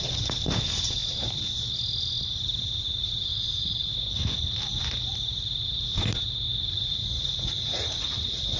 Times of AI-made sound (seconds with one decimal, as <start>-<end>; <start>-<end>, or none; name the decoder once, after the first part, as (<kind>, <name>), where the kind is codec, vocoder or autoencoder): 3.3-3.9 (vocoder, Vocos); 6.9-8.6